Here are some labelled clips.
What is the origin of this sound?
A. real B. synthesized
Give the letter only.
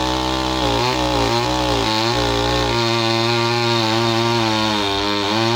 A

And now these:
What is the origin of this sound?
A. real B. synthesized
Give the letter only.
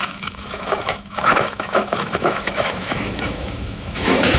B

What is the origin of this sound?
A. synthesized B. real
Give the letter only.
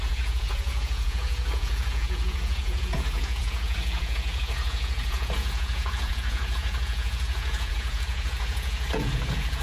A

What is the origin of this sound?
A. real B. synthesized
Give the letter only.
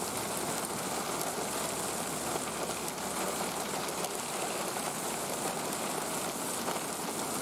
A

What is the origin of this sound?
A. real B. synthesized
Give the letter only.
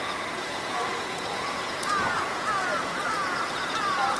B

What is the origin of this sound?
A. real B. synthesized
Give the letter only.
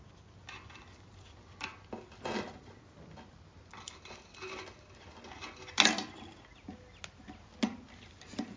A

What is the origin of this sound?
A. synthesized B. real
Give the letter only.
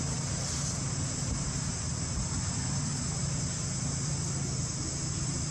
A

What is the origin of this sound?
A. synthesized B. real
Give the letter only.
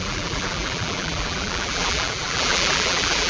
A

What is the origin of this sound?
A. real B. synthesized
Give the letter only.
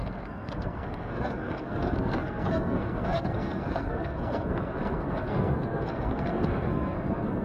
B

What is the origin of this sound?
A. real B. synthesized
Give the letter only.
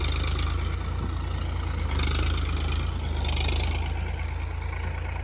A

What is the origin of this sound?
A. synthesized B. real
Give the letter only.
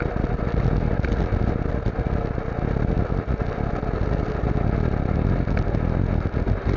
B